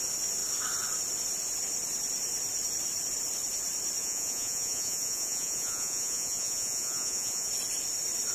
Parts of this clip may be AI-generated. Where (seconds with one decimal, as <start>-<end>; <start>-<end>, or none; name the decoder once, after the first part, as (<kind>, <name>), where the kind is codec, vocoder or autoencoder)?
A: 4.0-7.5 (vocoder, Vocos)